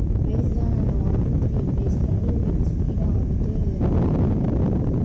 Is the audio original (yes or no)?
yes